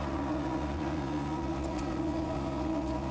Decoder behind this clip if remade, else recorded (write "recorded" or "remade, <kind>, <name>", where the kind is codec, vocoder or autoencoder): remade, vocoder, Vocos